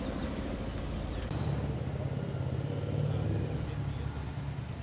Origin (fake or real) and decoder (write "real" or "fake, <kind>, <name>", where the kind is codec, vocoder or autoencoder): real